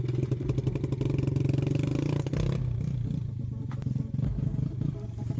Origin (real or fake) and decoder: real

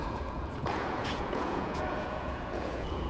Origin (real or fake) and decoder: fake, vocoder, Vocos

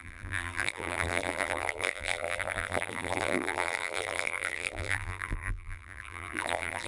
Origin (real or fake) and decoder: fake, vocoder, BigVGAN v2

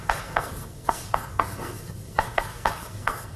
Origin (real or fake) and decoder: fake, codec, SNAC